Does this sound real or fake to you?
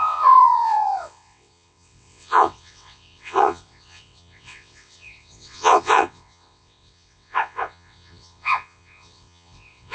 fake